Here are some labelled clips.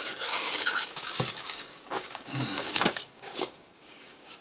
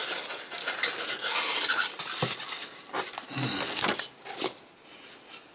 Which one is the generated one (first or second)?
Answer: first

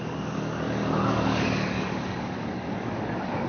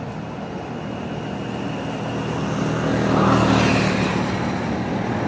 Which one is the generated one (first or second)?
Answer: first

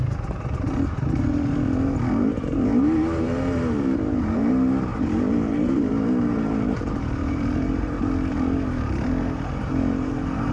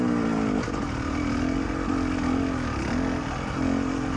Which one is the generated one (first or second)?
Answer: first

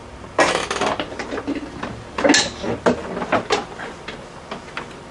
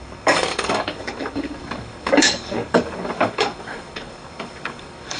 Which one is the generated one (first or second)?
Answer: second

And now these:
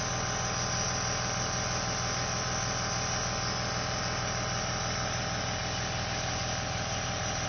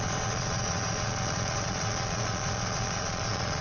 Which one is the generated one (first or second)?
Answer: second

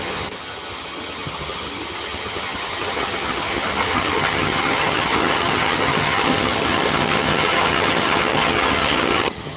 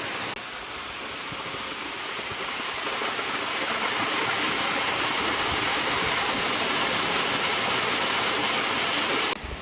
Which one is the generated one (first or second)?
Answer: first